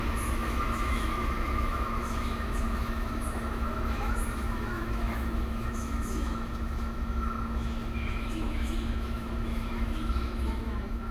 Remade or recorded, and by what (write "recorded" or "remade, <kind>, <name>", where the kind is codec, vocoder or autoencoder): remade, autoencoder, DAC-VAE